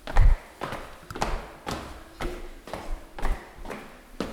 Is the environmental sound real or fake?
real